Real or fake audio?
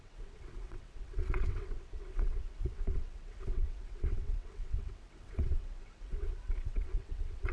fake